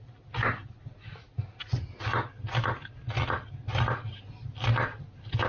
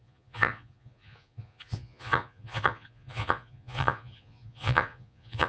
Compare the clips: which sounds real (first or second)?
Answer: first